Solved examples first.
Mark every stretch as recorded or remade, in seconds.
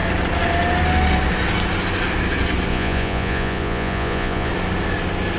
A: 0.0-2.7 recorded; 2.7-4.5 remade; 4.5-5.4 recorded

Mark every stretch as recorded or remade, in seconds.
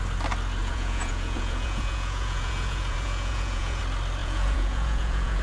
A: 0.0-0.6 recorded; 0.6-3.8 remade; 3.8-4.2 recorded; 4.2-5.4 remade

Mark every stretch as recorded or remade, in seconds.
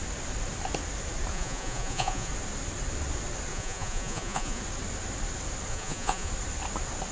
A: 0.0-1.3 recorded; 1.3-2.3 remade; 2.3-3.5 recorded; 3.5-4.6 remade; 4.6-5.7 recorded; 5.7-6.3 remade; 6.3-7.1 recorded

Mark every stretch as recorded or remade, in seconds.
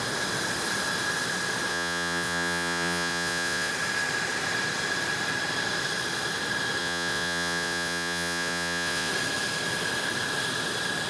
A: 0.0-1.7 recorded; 1.7-3.7 remade; 3.7-6.8 recorded; 6.8-9.1 remade; 9.1-11.1 recorded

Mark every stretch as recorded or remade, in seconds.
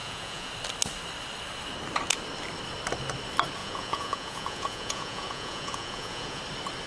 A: 0.0-0.5 remade; 0.5-3.6 recorded; 3.6-6.4 remade; 6.4-6.9 recorded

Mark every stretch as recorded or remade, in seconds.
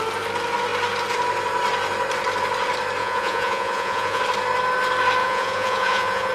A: 0.0-3.0 recorded; 3.0-4.2 remade; 4.2-5.2 recorded; 5.2-6.3 remade